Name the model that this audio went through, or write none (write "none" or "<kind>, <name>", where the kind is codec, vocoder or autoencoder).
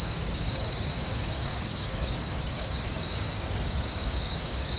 codec, DAC